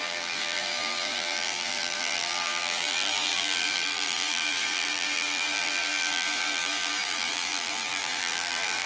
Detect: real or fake fake